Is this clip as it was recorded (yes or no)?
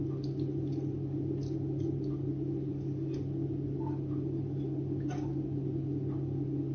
yes